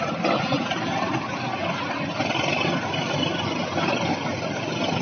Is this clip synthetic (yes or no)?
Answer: no